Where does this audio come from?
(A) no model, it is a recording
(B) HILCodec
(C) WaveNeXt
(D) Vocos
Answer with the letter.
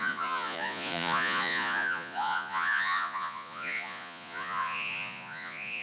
D